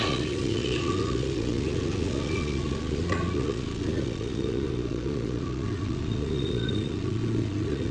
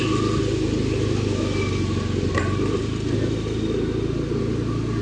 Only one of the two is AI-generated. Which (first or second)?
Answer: first